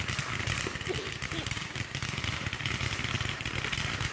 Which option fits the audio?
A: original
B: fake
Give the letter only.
A